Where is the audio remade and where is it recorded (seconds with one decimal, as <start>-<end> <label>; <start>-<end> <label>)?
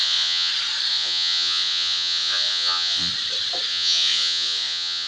0.0-0.5 remade; 0.5-0.9 recorded; 0.9-3.1 remade; 3.1-3.7 recorded; 3.7-5.1 remade